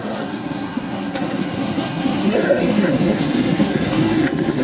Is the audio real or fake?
fake